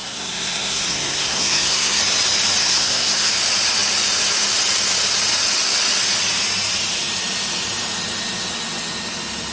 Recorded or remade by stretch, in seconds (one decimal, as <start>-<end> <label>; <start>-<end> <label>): 0.0-2.0 remade; 2.0-2.6 recorded; 2.6-3.3 remade; 3.3-9.5 recorded